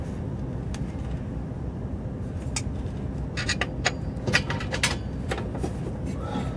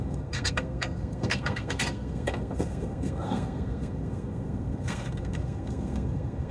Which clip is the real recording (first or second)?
first